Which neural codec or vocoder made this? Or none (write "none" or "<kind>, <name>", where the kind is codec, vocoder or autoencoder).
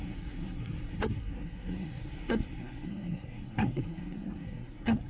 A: codec, SNAC